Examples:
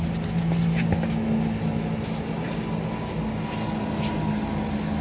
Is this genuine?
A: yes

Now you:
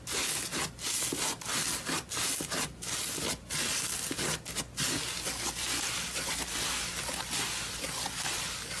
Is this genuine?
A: yes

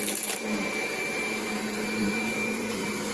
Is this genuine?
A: no